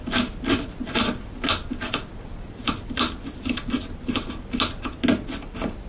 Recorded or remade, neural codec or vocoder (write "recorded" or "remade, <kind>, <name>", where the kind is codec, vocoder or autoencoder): recorded